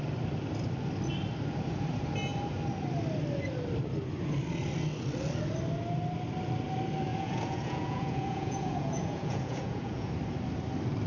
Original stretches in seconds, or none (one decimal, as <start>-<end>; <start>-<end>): 0.0-7.1; 10.1-11.1